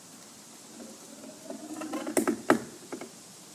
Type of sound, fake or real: real